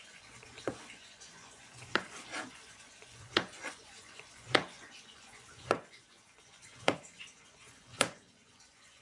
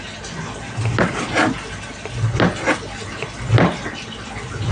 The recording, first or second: second